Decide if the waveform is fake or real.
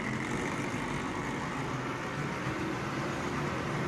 real